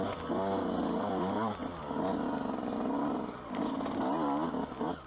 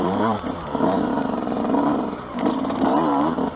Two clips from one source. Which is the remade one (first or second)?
second